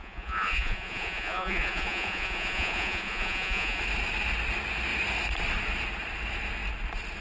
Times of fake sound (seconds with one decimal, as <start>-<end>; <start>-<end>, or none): 0.0-3.8